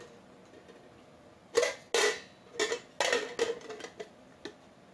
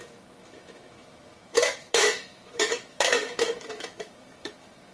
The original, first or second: first